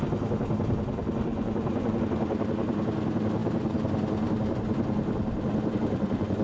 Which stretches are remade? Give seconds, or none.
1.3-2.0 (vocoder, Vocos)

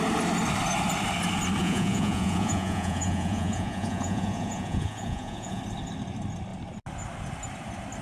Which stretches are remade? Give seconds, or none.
1.6-5.6 (vocoder, Vocos)

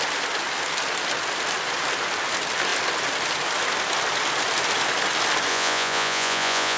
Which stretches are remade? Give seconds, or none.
5.5-6.8 (vocoder, Vocos)

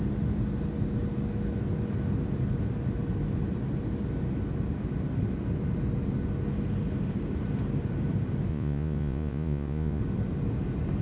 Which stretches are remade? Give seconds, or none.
8.5-10.0 (vocoder, Vocos)